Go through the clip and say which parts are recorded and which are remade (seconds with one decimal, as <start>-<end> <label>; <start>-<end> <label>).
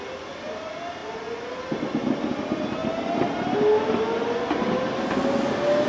0.0-5.9 recorded